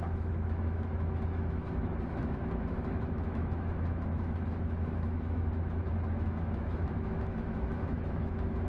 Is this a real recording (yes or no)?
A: no